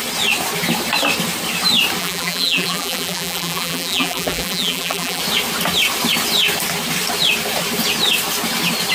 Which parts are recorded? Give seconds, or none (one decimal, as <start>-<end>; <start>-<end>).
0.0-2.0; 5.2-8.9